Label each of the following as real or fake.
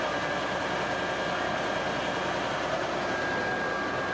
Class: real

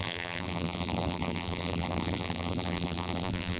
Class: fake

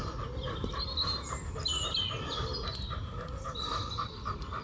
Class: real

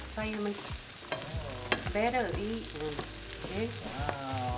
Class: real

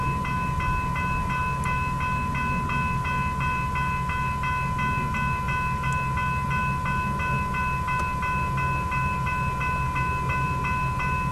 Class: real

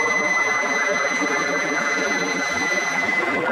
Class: fake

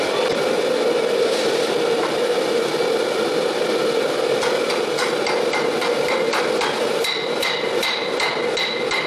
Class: fake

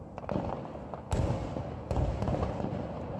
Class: fake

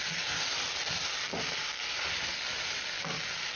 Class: real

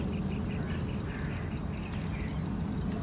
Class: real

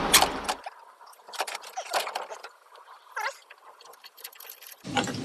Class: fake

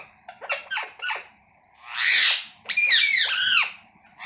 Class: fake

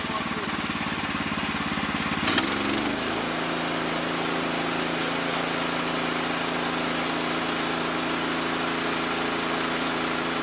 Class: real